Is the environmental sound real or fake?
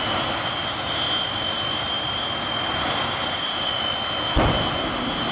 real